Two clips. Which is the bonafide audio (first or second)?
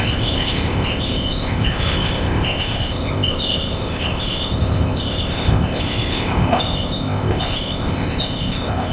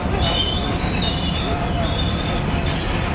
second